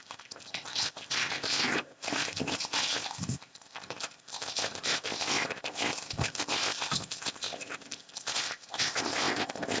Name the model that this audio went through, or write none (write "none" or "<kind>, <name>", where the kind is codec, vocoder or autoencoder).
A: codec, ZipCodec